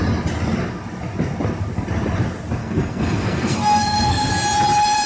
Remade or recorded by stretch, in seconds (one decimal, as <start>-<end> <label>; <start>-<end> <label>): 0.0-2.6 recorded; 2.6-4.3 remade; 4.3-5.1 recorded